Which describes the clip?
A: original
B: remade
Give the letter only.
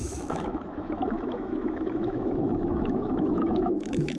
B